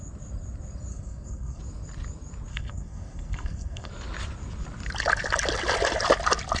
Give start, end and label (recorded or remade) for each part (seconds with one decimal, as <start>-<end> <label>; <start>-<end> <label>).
0.0-0.9 recorded; 0.9-1.6 remade; 1.6-2.5 recorded; 2.5-3.9 remade; 3.9-6.6 recorded